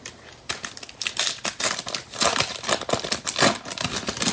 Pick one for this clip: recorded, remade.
recorded